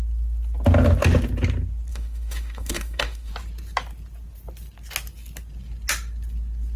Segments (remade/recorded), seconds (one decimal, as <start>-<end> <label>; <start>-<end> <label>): 0.0-1.9 recorded; 1.9-3.3 remade; 3.3-6.8 recorded